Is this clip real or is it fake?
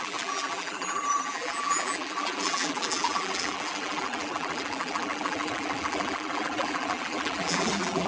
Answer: fake